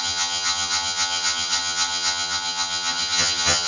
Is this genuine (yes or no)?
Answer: no